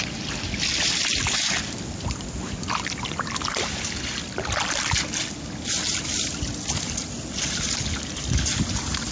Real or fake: real